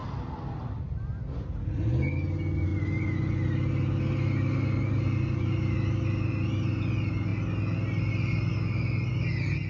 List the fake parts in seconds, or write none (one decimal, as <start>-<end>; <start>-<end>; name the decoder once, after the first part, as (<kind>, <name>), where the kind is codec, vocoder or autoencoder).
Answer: none